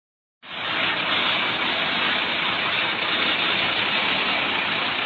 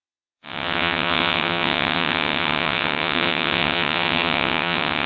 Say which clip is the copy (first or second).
second